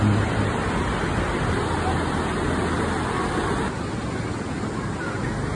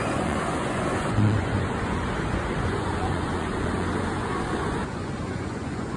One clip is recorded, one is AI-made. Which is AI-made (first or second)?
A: second